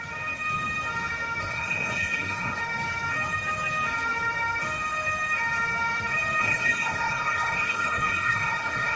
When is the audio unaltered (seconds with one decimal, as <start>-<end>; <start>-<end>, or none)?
0.0-1.4; 2.6-6.4